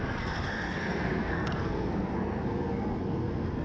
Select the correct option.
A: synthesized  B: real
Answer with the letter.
A